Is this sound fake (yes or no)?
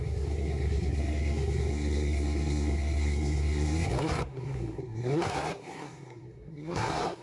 yes